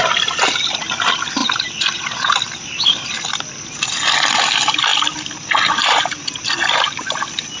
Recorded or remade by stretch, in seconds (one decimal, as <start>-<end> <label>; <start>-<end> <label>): 0.0-7.6 recorded